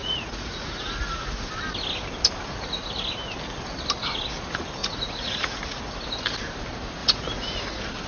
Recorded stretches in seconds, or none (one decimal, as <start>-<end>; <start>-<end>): 1.5-4.8; 5.8-7.0; 7.6-8.1